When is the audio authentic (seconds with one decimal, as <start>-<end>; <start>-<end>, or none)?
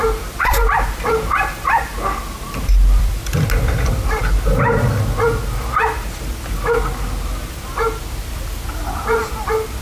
1.9-2.5; 4.2-8.1